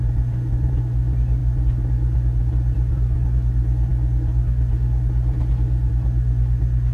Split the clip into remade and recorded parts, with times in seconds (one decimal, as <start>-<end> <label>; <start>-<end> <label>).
0.0-6.9 recorded